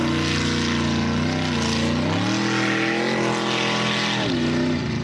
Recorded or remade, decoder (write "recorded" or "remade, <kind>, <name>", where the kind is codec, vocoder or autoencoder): recorded